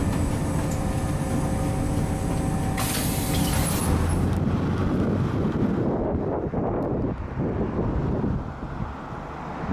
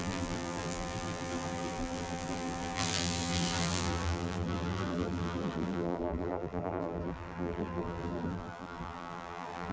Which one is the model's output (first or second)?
second